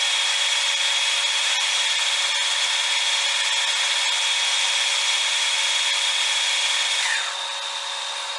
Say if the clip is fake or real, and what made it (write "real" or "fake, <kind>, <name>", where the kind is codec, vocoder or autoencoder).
real